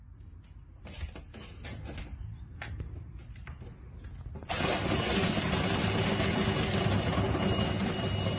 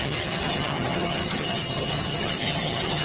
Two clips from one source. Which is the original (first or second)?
first